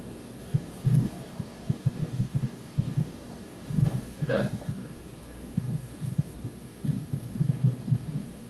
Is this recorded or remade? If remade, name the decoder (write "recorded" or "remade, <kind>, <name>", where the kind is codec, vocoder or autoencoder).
remade, codec, DAC